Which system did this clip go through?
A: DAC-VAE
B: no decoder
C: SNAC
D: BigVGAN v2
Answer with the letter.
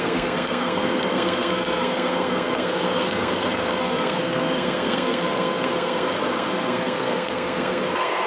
C